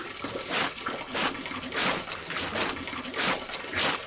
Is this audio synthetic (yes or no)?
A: no